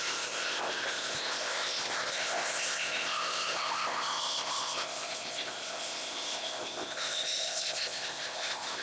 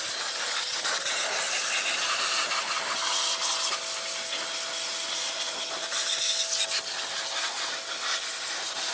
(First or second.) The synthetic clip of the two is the first